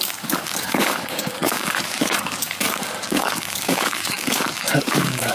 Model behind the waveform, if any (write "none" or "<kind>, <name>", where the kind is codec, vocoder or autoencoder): codec, DAC